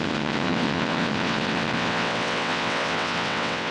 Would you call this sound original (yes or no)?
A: no